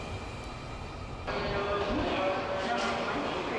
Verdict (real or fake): real